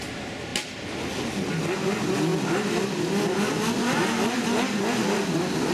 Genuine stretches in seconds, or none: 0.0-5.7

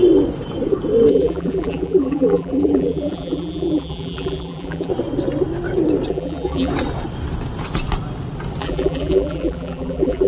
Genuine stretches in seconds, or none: 0.0-1.1; 4.9-6.1; 6.7-8.6

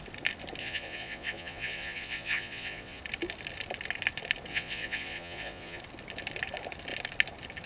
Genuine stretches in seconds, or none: 0.0-0.6; 3.0-4.5; 5.8-7.7